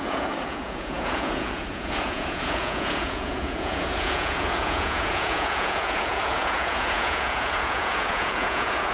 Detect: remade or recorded remade